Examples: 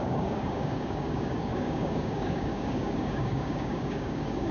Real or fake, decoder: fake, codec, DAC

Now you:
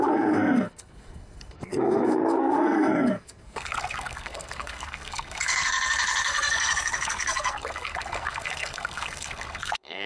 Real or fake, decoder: fake, codec, SNAC